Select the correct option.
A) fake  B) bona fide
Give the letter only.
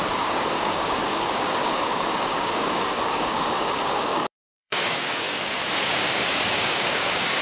A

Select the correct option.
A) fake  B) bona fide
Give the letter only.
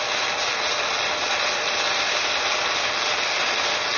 B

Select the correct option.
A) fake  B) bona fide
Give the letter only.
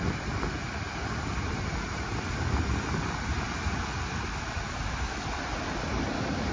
B